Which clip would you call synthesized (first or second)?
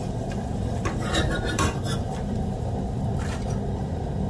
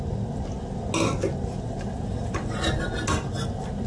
first